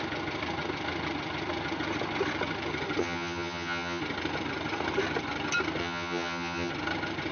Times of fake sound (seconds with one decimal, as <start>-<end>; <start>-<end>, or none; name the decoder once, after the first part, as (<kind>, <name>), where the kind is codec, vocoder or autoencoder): 3.0-4.0 (vocoder, HiFi-GAN); 5.8-6.7